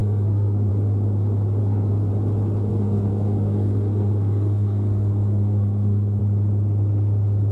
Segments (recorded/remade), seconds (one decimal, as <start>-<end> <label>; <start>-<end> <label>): 0.0-0.7 remade; 0.7-1.6 recorded; 1.6-2.1 remade; 2.1-2.7 recorded; 2.7-6.2 remade; 6.2-7.5 recorded